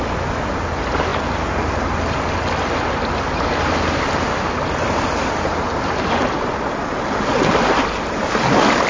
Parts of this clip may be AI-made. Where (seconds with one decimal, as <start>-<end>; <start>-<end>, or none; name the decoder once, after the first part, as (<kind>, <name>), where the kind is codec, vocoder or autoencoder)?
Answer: none